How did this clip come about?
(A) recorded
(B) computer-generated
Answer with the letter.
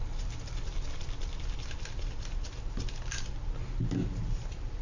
A